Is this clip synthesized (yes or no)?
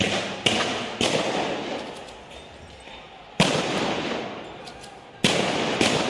no